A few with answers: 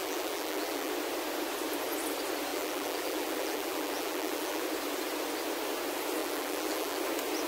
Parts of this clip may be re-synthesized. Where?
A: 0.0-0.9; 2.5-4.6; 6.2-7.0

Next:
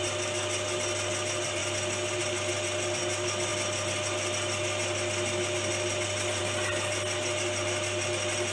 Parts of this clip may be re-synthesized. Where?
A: none

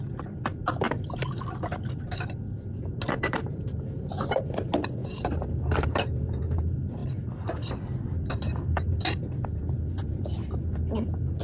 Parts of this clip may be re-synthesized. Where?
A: 3.1-4.4; 5.0-6.6

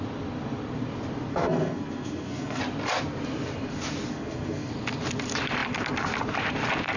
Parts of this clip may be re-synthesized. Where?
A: 1.3-2.6; 4.1-4.7

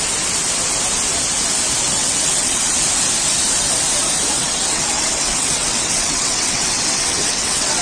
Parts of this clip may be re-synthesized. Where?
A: 2.0-2.6; 4.4-7.8

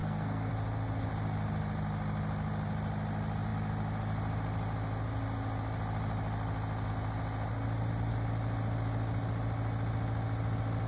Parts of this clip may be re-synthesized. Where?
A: 0.0-0.5

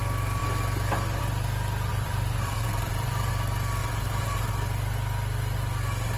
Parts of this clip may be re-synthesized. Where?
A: 1.9-3.3; 3.8-4.5